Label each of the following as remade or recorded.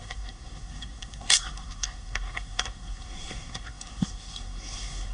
remade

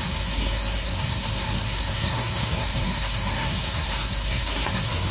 remade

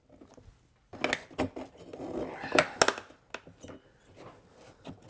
recorded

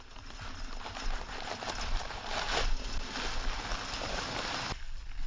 recorded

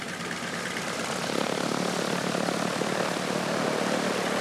recorded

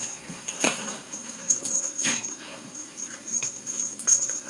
remade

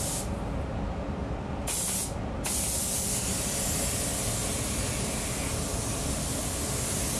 recorded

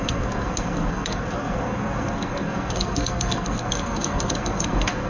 remade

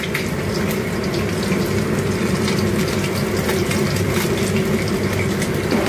recorded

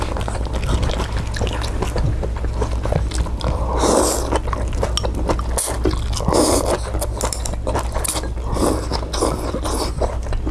recorded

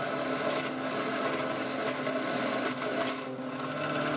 recorded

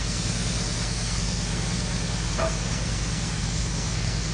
remade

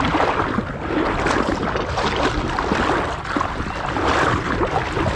recorded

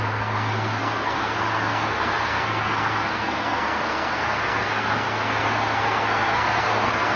remade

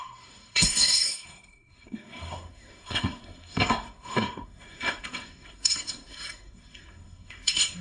remade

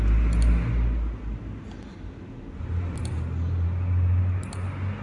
recorded